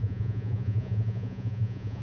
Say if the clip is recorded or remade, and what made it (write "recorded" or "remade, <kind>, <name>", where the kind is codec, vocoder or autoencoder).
remade, vocoder, Vocos